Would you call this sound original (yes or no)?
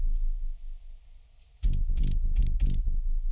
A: yes